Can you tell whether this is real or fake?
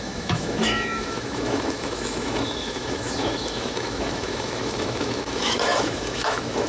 fake